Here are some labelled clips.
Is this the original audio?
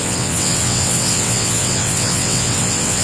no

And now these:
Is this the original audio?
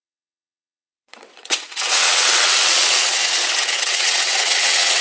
no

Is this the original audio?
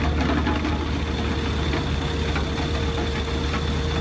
yes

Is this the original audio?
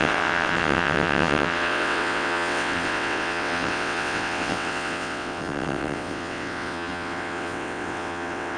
no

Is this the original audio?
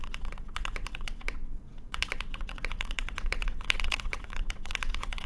no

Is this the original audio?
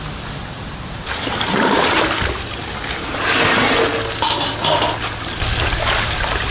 yes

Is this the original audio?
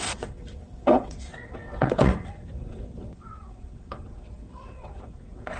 no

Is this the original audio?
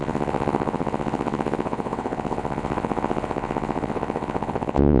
no